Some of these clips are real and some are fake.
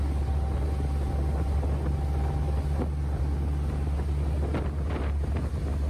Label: real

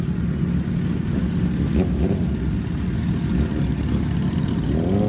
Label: real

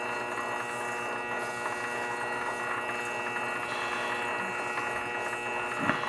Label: real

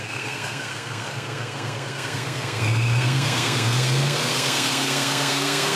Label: fake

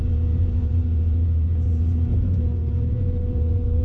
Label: fake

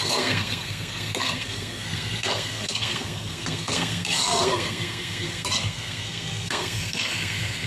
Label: fake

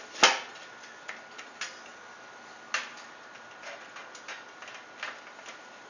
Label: real